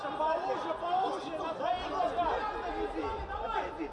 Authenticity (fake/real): real